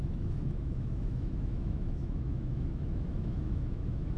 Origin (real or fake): fake